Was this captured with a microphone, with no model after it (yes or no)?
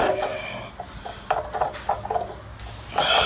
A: yes